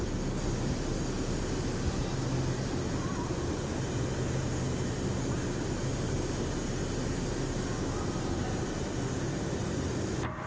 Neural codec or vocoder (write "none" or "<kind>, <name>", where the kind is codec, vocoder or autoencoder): none